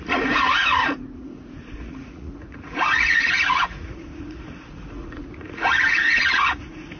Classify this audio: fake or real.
fake